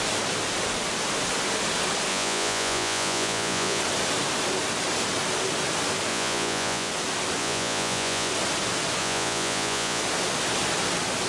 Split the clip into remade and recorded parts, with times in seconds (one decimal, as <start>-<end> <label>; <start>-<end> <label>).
0.0-2.1 recorded; 2.1-3.8 remade; 3.8-6.1 recorded; 6.1-6.9 remade; 6.9-7.4 recorded; 7.4-8.3 remade; 8.3-9.0 recorded; 9.0-10.0 remade; 10.0-11.3 recorded